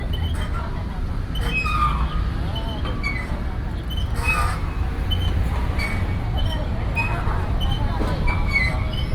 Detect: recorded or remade recorded